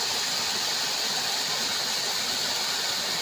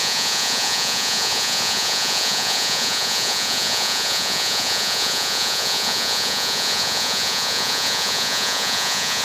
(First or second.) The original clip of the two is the first